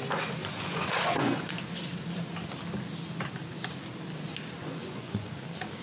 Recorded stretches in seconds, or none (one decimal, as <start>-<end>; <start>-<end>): 0.0-0.4; 1.6-4.6; 5.3-5.8

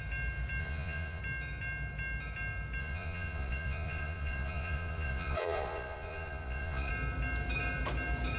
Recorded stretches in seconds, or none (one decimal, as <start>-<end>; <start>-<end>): 0.0-0.6; 1.2-2.8; 6.9-8.4

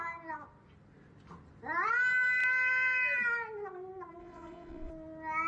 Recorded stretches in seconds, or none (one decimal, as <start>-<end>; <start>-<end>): 0.0-4.2; 4.9-5.5

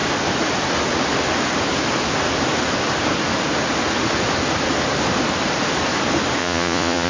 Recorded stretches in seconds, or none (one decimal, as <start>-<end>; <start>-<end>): 0.0-6.4

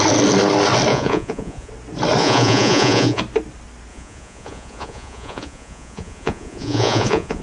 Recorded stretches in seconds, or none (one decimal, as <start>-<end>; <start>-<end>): 0.0-0.9; 1.7-2.2; 3.2-3.9